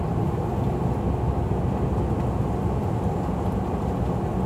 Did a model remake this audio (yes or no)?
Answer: no